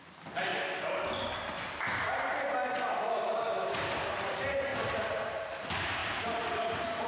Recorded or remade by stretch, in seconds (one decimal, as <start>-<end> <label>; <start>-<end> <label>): 0.0-4.7 recorded; 4.7-5.2 remade; 5.2-7.1 recorded